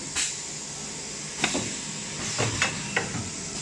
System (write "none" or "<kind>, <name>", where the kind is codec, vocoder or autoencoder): none